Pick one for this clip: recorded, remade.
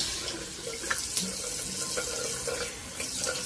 recorded